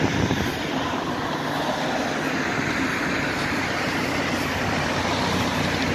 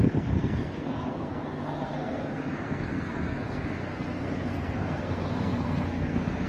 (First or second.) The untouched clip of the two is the first